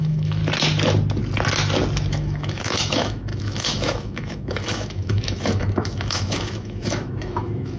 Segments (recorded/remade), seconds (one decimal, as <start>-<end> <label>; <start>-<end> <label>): 0.0-0.4 remade; 0.4-2.1 recorded; 2.1-7.8 remade